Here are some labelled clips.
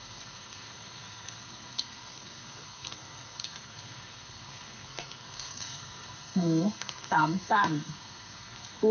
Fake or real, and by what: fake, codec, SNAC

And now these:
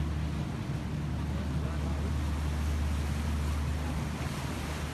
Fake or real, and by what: real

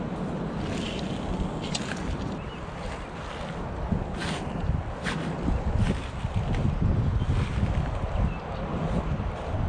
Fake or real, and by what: real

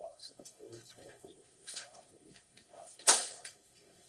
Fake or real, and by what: fake, codec, SNAC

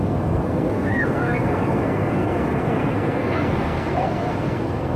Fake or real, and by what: fake, codec, SNAC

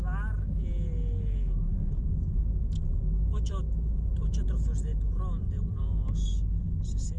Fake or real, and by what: real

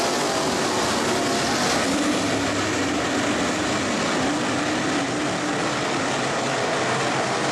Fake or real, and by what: real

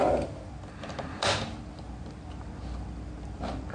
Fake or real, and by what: real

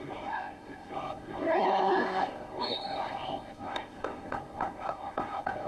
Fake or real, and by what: fake, codec, SNAC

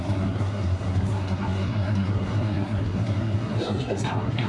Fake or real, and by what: fake, codec, SNAC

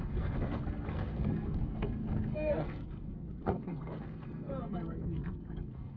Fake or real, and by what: fake, codec, SNAC